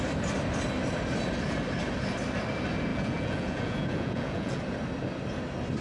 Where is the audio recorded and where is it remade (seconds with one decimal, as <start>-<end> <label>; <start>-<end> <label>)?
0.0-2.9 recorded; 2.9-4.6 remade; 4.6-5.8 recorded